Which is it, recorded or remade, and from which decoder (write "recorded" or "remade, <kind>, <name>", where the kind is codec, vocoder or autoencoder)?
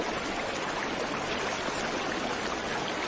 recorded